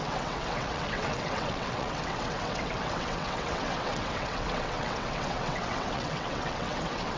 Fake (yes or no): yes